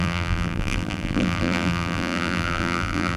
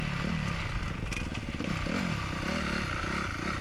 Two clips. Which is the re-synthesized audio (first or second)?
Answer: first